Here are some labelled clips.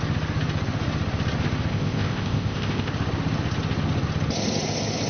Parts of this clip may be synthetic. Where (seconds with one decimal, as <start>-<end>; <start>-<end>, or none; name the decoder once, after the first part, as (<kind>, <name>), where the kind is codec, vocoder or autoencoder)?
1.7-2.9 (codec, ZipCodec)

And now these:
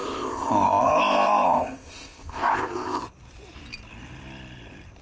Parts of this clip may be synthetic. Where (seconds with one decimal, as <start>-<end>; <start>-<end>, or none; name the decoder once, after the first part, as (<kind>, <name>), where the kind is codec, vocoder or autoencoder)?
0.0-3.0 (codec, ZipCodec)

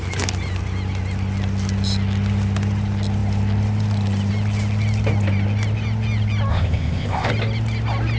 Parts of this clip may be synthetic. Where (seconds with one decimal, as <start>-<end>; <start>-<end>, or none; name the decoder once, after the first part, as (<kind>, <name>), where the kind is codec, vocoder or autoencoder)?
6.5-7.3 (codec, ZipCodec)